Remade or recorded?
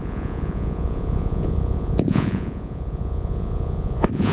remade